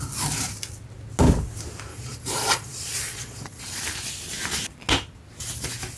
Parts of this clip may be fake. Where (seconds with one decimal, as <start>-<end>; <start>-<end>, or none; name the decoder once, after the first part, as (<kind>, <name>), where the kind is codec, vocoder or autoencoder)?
1.9-3.8 (vocoder, Vocos)